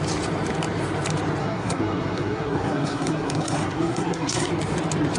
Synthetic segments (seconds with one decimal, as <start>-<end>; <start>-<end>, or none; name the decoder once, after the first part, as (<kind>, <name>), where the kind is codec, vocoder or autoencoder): 1.4-4.5 (codec, SNAC)